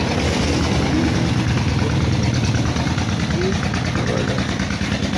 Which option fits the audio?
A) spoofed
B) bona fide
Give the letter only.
B